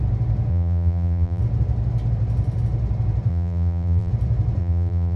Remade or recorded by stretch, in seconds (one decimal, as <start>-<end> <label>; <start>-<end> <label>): 0.0-0.5 recorded; 0.5-1.4 remade; 1.4-3.3 recorded; 3.3-4.1 remade; 4.1-4.6 recorded; 4.6-5.2 remade